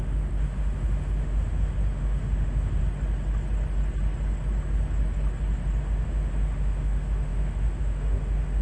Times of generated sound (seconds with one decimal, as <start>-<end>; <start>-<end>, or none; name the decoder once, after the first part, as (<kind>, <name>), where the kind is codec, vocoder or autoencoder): 0.0-2.8 (autoencoder, DAC-VAE); 5.8-8.6